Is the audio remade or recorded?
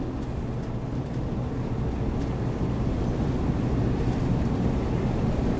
recorded